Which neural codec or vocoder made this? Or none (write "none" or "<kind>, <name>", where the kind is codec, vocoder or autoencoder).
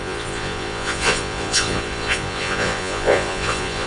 vocoder, Vocos